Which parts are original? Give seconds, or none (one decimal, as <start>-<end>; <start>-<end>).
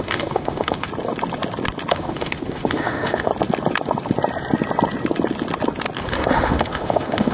0.9-1.9; 3.3-6.0